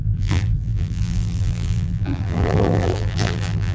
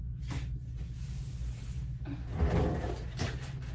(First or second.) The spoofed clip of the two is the first